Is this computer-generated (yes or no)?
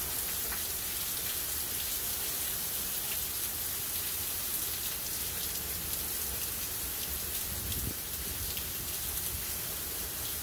no